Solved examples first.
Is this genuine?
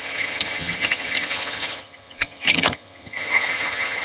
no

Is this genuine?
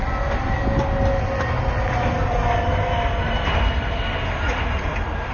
yes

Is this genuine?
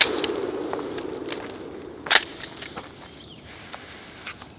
yes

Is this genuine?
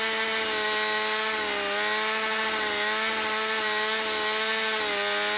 yes